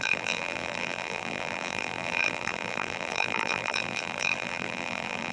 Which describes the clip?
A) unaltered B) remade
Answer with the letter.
B